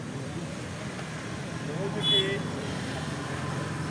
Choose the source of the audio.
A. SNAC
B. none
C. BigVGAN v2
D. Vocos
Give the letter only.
B